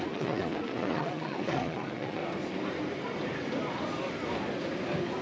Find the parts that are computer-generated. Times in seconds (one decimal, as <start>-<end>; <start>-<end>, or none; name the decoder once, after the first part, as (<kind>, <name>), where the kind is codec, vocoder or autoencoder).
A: 0.0-2.2 (vocoder, Vocos)